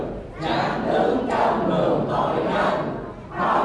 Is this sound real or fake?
real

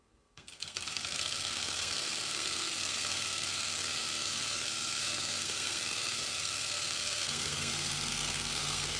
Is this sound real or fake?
fake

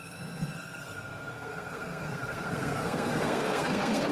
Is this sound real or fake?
fake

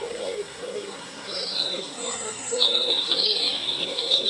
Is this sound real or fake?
fake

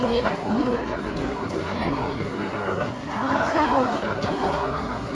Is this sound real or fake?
fake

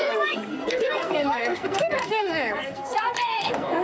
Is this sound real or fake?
fake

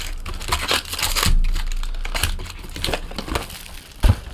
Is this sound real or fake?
real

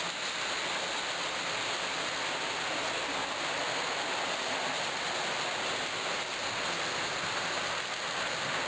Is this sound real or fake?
real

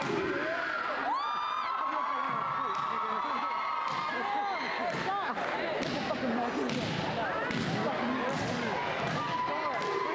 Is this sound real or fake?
real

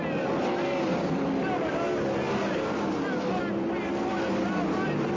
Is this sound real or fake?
real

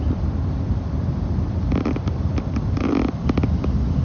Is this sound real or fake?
real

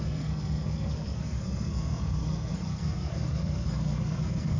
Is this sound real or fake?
fake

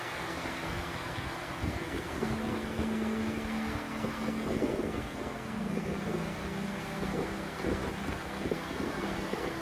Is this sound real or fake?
fake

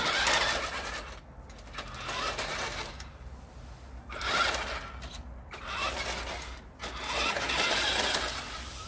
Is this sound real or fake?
real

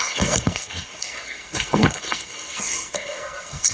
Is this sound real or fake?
fake